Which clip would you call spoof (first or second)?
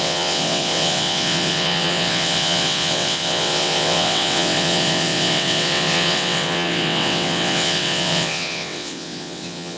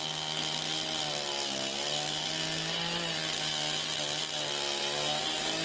first